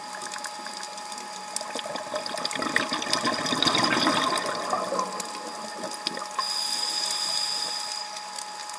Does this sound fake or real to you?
real